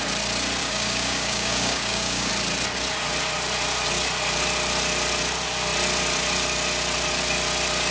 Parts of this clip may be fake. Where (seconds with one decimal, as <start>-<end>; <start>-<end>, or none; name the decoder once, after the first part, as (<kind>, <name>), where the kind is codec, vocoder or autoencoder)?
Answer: 0.6-2.3 (codec, DAC)